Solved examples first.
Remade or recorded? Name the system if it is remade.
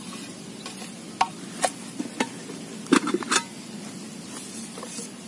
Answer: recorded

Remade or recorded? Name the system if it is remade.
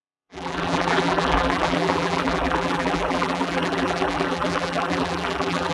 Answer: remade, vocoder, BigVGAN v2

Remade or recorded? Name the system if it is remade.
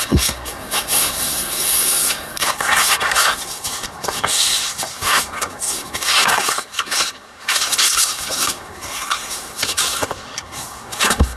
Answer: remade, codec, SNAC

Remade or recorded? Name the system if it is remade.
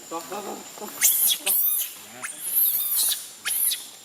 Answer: recorded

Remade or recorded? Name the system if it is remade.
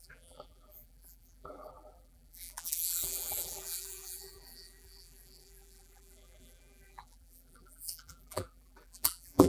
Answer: remade, vocoder, BigVGAN v2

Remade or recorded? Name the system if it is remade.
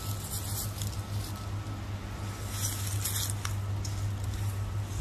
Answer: recorded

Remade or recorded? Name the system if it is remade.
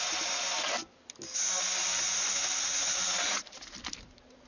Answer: recorded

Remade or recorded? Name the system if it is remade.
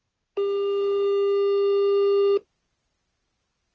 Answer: recorded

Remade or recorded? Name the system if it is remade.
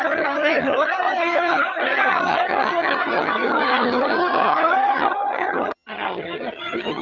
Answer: remade, vocoder, HiFi-GAN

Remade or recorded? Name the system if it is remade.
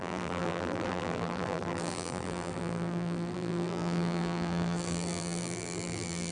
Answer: remade, vocoder, BigVGAN v2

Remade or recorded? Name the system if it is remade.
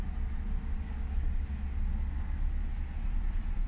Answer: recorded